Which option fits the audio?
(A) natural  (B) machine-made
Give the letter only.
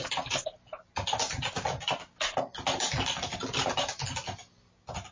A